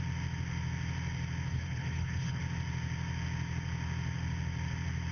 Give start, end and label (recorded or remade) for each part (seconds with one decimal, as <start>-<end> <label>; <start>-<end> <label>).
0.0-1.5 recorded; 1.5-2.4 remade; 2.4-5.1 recorded